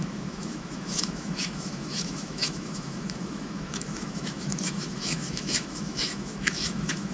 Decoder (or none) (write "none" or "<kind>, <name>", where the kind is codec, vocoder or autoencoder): autoencoder, DAC-VAE